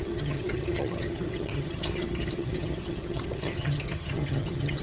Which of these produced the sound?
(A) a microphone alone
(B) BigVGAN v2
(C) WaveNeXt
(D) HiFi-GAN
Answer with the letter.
D